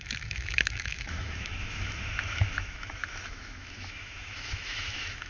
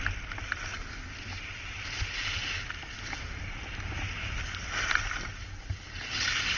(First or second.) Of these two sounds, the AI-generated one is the first